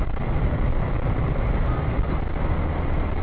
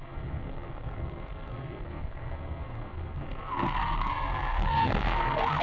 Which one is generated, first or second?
second